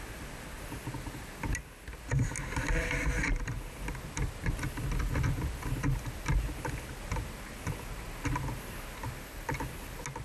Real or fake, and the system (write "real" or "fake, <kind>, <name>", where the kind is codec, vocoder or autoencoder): real